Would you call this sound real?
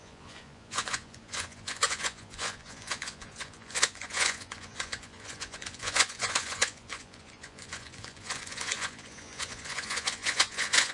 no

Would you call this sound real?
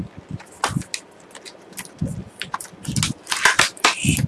yes